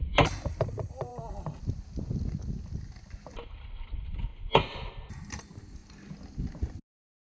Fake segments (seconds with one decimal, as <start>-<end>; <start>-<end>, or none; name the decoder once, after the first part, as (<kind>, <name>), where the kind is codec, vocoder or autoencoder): none